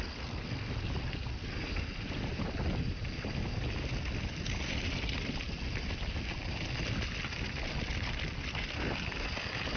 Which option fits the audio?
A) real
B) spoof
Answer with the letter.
A